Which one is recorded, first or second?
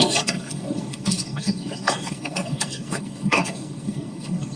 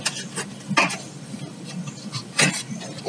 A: second